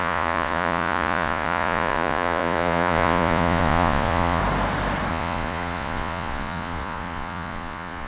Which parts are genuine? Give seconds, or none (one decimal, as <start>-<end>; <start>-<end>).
4.4-5.1